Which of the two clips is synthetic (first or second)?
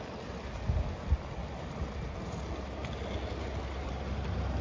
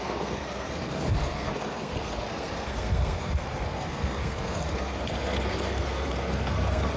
second